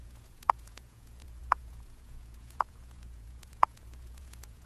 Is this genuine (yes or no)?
no